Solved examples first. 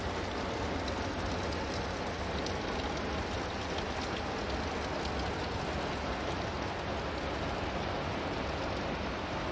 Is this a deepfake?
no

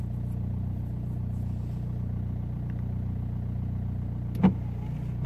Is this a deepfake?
no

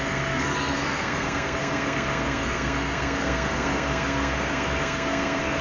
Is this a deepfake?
yes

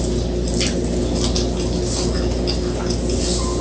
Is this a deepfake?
no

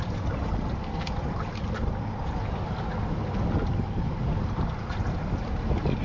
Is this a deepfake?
no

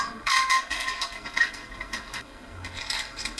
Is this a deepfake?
yes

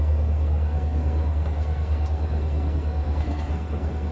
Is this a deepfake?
yes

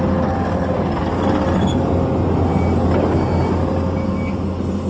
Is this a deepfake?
no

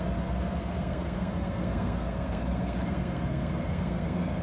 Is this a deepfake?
yes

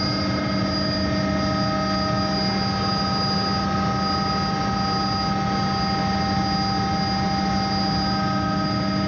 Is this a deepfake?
no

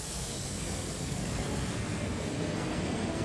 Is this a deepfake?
yes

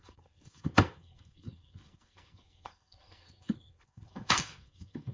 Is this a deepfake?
yes